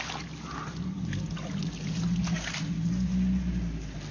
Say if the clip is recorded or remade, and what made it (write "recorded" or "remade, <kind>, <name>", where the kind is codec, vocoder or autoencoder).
recorded